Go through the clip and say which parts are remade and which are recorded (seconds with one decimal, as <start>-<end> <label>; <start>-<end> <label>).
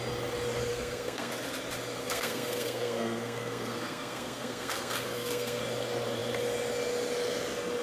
0.0-0.7 recorded; 0.7-1.3 remade; 1.3-2.0 recorded; 2.0-5.6 remade; 5.6-7.8 recorded